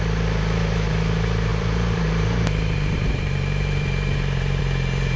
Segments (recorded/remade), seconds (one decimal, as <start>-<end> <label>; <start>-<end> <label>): 0.0-1.5 recorded; 1.5-4.6 remade; 4.6-5.2 recorded